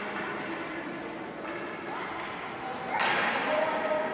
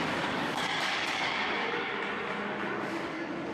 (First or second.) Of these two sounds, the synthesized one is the second